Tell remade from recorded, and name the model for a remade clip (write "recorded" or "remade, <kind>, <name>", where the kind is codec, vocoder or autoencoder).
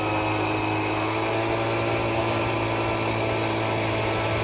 recorded